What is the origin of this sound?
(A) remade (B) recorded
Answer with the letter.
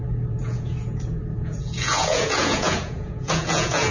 A